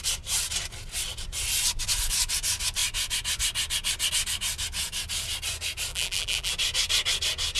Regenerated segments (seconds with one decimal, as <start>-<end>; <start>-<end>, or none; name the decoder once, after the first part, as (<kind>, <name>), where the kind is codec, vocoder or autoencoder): 5.9-6.5 (vocoder, BigVGAN v2)